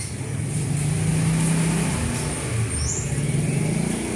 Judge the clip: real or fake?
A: real